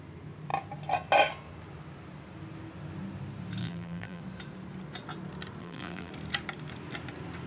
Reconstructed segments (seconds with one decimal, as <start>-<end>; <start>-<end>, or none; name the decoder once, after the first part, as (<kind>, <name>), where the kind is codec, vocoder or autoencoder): 3.6-4.2 (vocoder, BigVGAN v2); 5.6-6.1